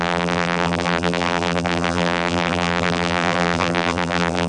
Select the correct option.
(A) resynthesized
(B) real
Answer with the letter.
A